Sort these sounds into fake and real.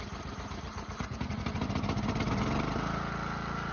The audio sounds real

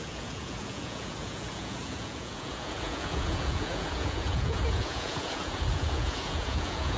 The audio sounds fake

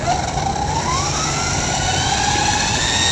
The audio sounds real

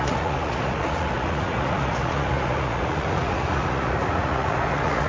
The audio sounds fake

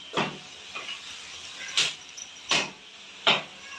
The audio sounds real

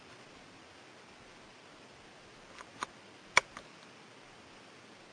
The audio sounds real